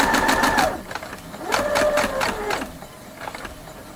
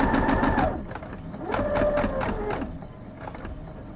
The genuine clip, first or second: second